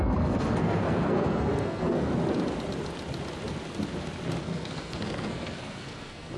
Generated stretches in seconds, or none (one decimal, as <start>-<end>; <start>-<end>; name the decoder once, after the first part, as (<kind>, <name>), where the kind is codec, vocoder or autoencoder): 0.0-2.1 (codec, SNAC); 4.4-6.4